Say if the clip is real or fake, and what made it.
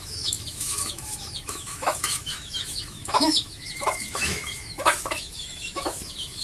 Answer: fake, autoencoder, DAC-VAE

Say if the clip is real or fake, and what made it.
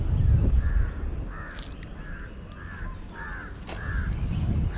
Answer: real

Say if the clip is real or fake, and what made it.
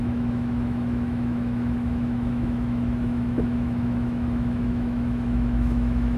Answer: fake, autoencoder, DAC-VAE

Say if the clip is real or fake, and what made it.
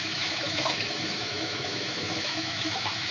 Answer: fake, autoencoder, DAC-VAE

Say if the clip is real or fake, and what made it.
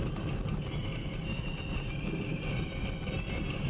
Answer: real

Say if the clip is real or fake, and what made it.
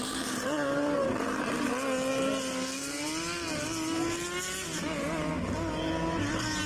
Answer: real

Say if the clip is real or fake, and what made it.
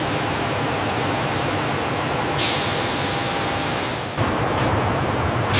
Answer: real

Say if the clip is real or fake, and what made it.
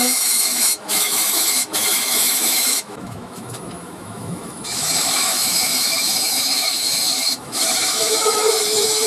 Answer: fake, autoencoder, DAC-VAE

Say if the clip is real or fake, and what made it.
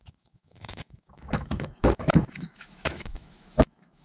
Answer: fake, autoencoder, DAC-VAE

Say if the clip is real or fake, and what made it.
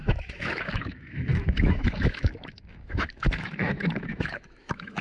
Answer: fake, autoencoder, DAC-VAE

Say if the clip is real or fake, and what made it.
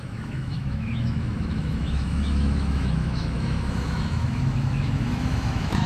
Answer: fake, autoencoder, DAC-VAE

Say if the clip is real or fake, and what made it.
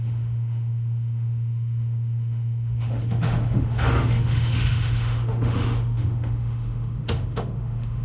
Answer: fake, autoencoder, DAC-VAE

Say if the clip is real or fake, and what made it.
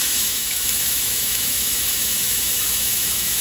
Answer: fake, autoencoder, DAC-VAE